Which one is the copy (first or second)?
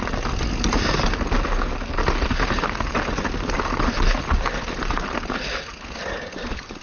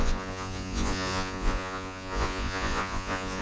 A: second